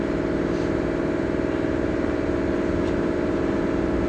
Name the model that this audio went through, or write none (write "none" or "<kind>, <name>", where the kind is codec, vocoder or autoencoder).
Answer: vocoder, BigVGAN v2